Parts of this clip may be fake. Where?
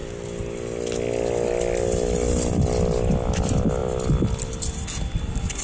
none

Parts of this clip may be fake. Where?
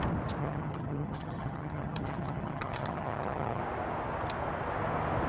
0.4-3.6 (vocoder, HiFi-GAN)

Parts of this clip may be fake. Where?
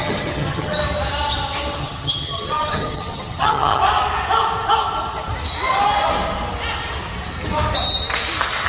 0.0-0.8 (vocoder, HiFi-GAN); 1.8-3.8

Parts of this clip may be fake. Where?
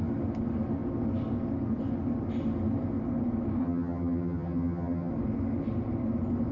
3.6-5.1 (vocoder, HiFi-GAN)